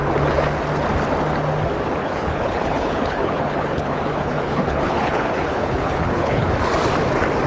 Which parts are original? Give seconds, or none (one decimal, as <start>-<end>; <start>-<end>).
0.0-2.0; 6.5-7.5